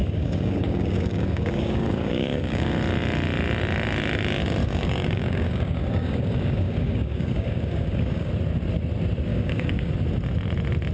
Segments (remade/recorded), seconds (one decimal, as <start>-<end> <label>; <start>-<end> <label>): 0.0-2.7 remade; 2.7-4.6 recorded; 4.6-8.3 remade; 8.3-9.3 recorded; 9.3-9.9 remade; 9.9-10.9 recorded